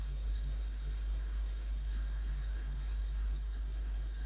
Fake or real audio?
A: fake